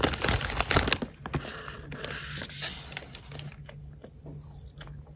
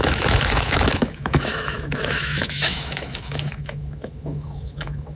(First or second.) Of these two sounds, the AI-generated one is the second